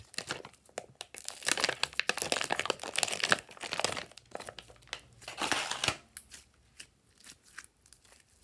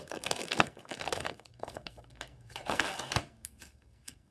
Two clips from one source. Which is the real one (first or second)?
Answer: first